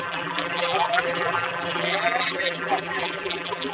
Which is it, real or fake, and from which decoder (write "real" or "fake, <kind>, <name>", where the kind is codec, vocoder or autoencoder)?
fake, vocoder, BigVGAN v2